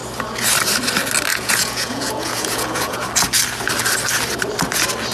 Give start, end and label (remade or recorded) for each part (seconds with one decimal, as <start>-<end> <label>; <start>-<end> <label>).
0.0-1.3 recorded; 1.3-3.0 remade; 3.0-5.1 recorded

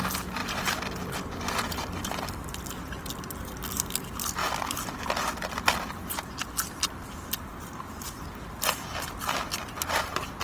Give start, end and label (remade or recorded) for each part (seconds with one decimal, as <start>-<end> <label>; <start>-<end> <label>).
0.0-0.4 recorded; 0.4-3.0 remade; 3.0-4.4 recorded; 4.4-5.1 remade; 5.1-10.4 recorded

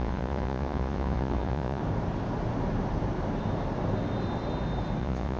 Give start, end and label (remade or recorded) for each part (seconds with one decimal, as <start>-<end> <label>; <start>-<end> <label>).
0.0-1.8 remade; 1.8-5.0 recorded; 5.0-5.4 remade

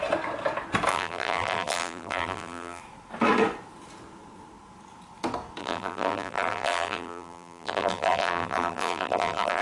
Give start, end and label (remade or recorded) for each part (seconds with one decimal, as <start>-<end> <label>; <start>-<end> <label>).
0.0-0.9 recorded; 0.9-2.8 remade; 2.8-5.6 recorded; 5.6-9.6 remade